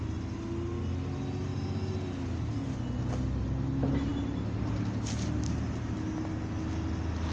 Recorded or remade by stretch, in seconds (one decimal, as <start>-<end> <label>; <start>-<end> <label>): 0.0-7.3 recorded